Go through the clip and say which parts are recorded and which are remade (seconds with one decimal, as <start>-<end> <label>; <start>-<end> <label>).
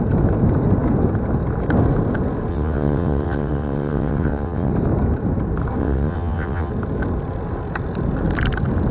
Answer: 0.0-2.5 recorded; 2.5-4.7 remade; 4.7-5.8 recorded; 5.8-6.7 remade; 6.7-8.9 recorded